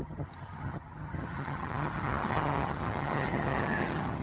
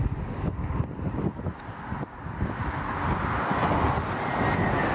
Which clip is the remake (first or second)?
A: first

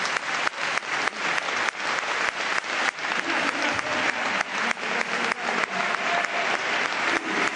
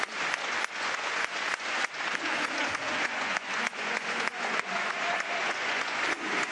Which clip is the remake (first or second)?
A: second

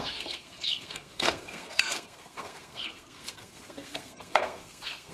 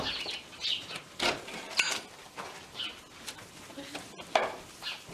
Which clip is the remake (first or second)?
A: first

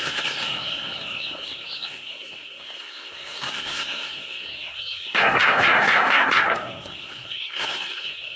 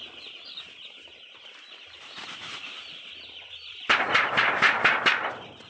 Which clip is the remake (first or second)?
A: first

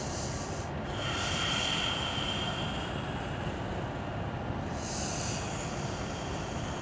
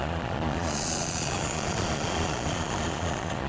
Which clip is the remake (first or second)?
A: second